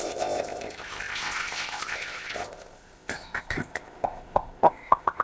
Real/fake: fake